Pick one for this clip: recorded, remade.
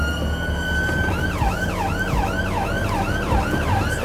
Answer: recorded